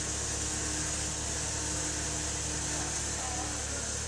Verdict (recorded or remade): recorded